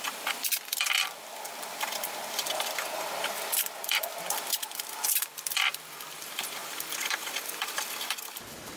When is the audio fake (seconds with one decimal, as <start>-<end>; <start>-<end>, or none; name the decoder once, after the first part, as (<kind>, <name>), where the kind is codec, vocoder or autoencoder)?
0.0-8.8 (vocoder, BigVGAN v2)

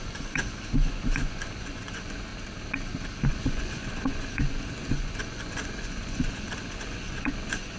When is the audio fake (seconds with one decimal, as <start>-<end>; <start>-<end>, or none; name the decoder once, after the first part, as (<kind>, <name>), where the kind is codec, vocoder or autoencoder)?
0.0-2.3 (vocoder, Vocos); 3.3-7.8

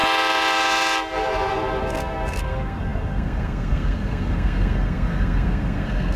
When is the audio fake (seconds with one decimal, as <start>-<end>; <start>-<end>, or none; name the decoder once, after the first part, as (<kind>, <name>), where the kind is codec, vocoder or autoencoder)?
1.8-6.2 (codec, SNAC)

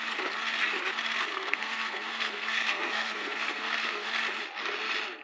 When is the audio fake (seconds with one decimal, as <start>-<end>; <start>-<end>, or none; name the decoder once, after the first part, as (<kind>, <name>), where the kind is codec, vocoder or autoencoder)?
1.3-4.1 (codec, SNAC)

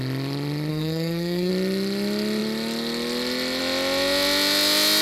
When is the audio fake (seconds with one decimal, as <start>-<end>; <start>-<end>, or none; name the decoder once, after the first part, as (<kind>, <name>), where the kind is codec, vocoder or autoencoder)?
0.7-1.5 (codec, SNAC)

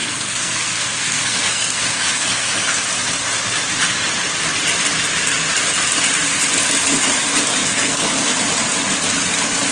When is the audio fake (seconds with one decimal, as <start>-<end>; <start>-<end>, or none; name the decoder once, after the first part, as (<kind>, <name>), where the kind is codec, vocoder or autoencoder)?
0.0-2.8 (codec, SNAC); 7.6-8.1

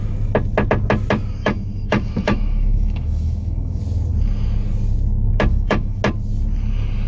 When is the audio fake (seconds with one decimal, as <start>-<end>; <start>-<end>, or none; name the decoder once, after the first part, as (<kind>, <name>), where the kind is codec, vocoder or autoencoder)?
1.4-3.8 (autoencoder, DAC-VAE); 5.5-6.0